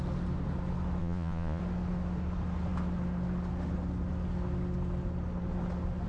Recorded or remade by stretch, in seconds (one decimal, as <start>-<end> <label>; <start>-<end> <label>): 0.0-1.0 recorded; 1.0-1.6 remade; 1.6-6.1 recorded